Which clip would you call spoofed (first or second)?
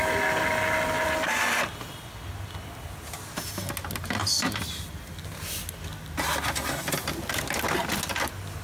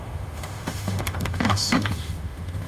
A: second